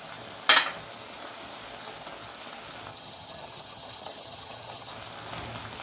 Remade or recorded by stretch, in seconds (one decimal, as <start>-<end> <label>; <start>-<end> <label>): 0.0-2.9 recorded; 2.9-4.9 remade; 4.9-5.8 recorded